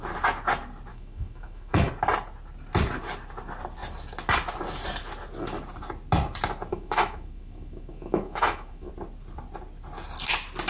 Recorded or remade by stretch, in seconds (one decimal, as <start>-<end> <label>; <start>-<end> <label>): 0.0-0.9 recorded; 0.9-1.9 remade; 1.9-6.7 recorded; 6.7-8.9 remade; 8.9-10.7 recorded